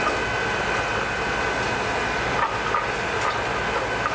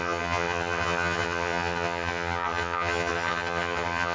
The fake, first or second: second